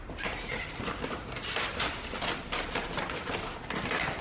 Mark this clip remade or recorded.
recorded